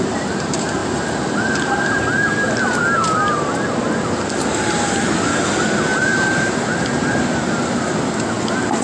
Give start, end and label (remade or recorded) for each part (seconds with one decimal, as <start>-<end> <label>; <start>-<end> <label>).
0.0-8.8 recorded

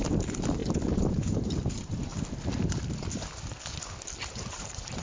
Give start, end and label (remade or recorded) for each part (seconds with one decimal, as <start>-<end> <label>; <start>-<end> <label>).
0.0-0.6 remade; 0.6-1.1 recorded; 1.1-2.1 remade; 2.1-4.5 recorded; 4.5-5.0 remade

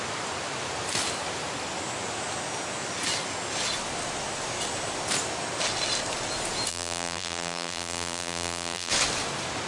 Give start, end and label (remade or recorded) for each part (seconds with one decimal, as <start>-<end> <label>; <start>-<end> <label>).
0.0-6.7 recorded; 6.7-8.9 remade; 8.9-9.7 recorded

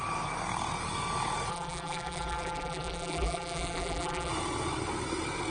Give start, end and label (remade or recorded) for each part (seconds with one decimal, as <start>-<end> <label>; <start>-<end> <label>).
0.0-1.5 recorded; 1.5-4.3 remade; 4.3-5.5 recorded